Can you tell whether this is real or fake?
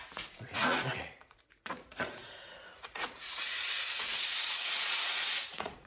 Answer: fake